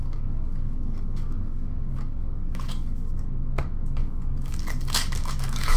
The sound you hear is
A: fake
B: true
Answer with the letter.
A